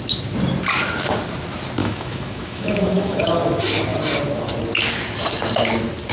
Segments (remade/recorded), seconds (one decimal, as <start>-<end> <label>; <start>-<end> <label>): 0.0-1.8 recorded; 1.8-3.2 remade; 3.2-6.1 recorded